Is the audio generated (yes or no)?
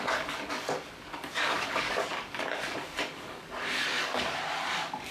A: yes